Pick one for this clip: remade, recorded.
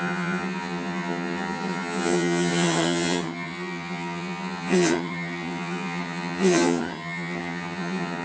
remade